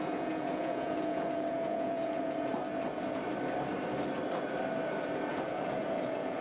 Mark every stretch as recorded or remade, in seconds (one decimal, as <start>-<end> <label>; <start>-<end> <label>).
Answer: 0.0-2.5 remade; 2.5-5.3 recorded; 5.3-6.4 remade